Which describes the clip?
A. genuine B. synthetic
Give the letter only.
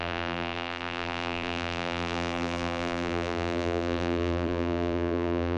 B